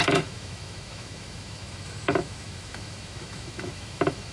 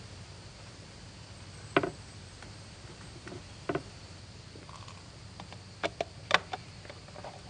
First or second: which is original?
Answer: second